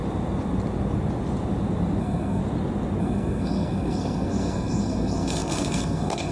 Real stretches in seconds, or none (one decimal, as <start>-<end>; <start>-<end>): 0.0-2.0; 2.4-3.0